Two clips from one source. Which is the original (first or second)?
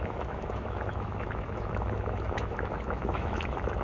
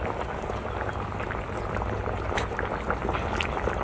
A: second